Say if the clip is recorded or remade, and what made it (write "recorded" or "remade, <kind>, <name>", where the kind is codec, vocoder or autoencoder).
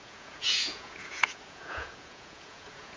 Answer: remade, vocoder, Vocos